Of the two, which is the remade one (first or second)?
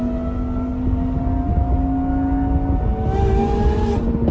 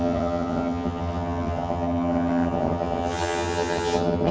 second